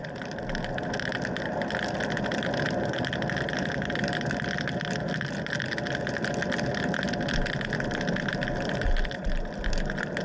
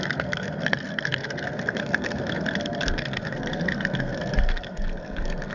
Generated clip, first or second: second